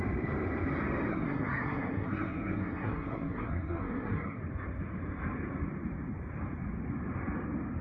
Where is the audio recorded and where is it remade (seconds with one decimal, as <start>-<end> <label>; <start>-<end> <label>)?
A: 0.0-1.1 recorded; 1.1-4.4 remade; 4.4-7.8 recorded